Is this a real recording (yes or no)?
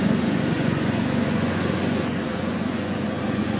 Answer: no